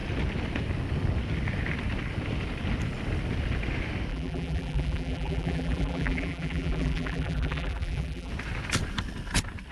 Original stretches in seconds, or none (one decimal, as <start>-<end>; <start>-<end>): 0.0-4.1; 8.3-9.7